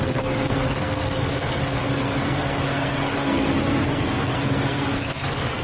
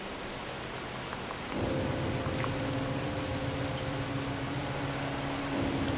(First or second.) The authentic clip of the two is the second